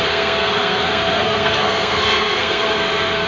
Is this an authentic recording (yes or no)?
no